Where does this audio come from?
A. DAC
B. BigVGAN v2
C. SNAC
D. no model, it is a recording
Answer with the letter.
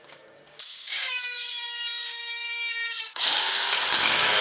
A